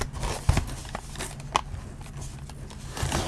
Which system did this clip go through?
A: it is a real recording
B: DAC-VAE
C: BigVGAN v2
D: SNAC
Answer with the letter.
A